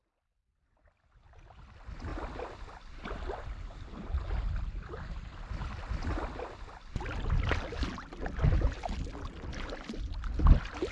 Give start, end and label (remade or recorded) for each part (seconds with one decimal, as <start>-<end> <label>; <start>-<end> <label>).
0.0-10.9 recorded